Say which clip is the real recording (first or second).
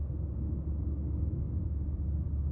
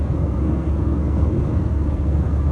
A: first